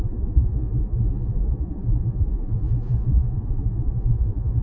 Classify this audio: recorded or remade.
remade